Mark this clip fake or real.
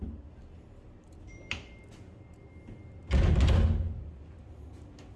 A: real